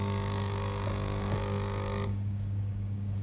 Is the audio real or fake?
fake